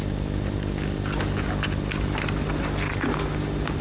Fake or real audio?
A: real